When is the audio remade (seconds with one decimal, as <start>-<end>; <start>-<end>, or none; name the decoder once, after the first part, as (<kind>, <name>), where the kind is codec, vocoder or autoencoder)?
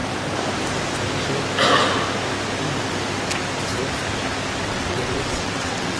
4.6-6.0 (vocoder, WaveNeXt)